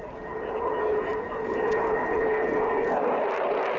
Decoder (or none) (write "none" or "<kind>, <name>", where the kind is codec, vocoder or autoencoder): none